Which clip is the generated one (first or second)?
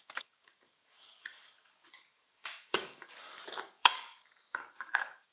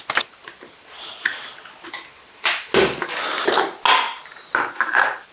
first